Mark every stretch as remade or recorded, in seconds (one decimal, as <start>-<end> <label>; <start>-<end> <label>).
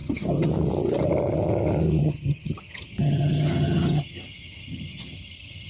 0.0-0.5 remade; 0.5-2.0 recorded; 2.0-5.7 remade